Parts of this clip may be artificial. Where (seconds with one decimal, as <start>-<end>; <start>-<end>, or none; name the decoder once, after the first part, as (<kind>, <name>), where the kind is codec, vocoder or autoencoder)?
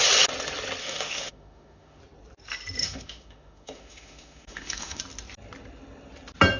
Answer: 0.8-2.0 (autoencoder, DAC-VAE); 2.8-5.0